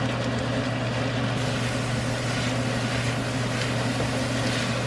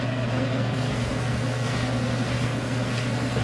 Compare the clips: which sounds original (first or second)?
first